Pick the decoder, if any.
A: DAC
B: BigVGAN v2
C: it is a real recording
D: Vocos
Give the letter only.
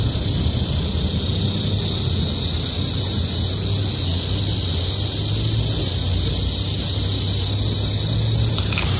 C